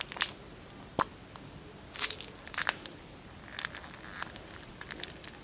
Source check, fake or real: real